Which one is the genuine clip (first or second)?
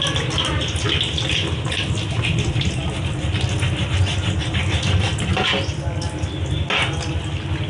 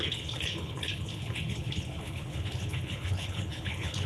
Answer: first